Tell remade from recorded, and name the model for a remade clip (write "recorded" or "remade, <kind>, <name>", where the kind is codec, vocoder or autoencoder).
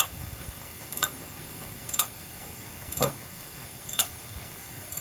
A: remade, codec, SNAC